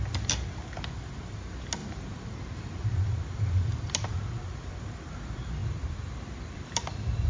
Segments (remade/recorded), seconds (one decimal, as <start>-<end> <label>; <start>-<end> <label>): 0.0-5.6 recorded; 5.6-7.3 remade